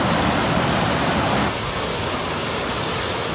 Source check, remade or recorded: recorded